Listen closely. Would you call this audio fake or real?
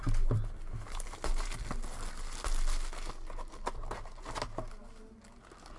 real